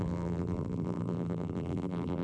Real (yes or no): no